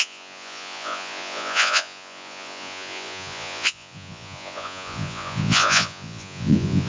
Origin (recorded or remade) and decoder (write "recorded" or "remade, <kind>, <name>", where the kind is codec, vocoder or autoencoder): remade, vocoder, Vocos